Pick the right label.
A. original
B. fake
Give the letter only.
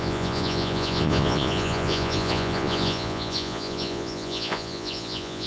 B